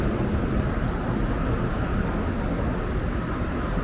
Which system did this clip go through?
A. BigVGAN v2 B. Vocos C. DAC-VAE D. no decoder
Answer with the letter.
D